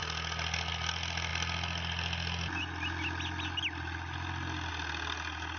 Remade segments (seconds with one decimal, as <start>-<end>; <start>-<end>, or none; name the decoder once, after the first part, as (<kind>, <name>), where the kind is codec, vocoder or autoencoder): none